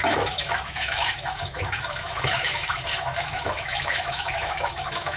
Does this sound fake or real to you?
fake